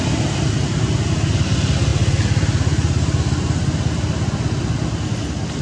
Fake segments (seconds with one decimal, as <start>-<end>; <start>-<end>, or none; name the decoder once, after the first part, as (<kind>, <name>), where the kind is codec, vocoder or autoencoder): none